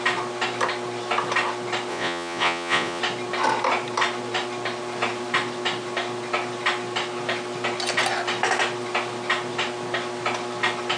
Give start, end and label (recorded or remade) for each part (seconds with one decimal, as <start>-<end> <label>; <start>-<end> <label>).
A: 0.0-1.9 recorded; 1.9-3.0 remade; 3.0-11.0 recorded